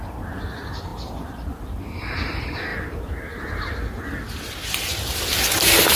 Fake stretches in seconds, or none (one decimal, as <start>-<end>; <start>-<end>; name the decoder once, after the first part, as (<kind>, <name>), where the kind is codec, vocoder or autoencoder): none